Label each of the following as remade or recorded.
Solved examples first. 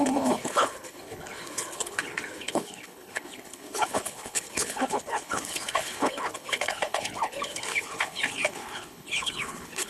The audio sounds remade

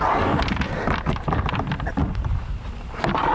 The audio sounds recorded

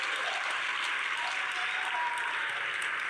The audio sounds recorded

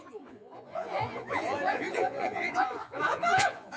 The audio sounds remade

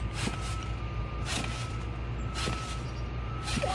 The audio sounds remade